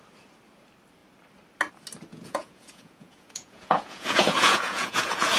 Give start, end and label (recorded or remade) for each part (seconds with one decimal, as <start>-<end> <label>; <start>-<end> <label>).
0.0-2.1 recorded; 2.1-5.4 remade